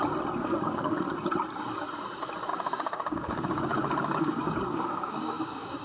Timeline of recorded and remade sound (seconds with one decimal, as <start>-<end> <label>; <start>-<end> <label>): 0.0-0.4 recorded; 0.4-1.0 remade; 1.0-2.5 recorded; 2.5-5.8 remade